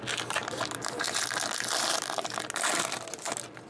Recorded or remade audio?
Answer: recorded